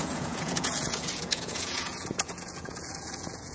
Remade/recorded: remade